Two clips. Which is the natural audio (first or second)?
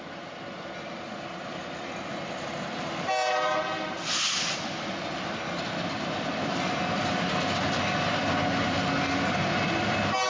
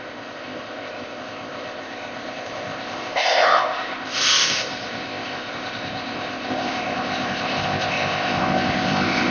first